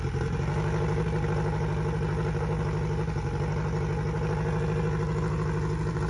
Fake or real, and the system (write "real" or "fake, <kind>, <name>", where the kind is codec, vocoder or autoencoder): real